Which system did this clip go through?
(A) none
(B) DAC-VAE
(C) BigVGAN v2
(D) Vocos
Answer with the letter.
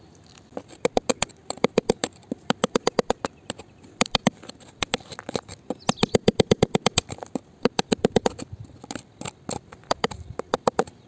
A